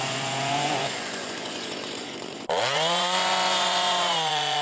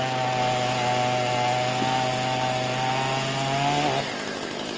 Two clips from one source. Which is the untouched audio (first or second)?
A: second